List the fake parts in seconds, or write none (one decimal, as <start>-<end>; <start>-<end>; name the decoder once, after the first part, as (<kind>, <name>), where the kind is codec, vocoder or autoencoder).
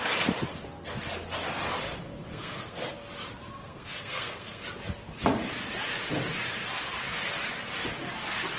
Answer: 2.3-2.8 (codec, SNAC); 3.6-4.6